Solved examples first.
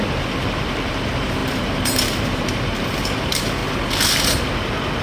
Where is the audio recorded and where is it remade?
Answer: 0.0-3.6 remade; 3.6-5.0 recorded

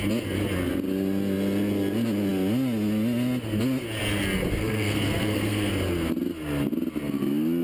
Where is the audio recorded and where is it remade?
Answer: 0.0-4.6 recorded; 4.6-5.7 remade; 5.7-7.6 recorded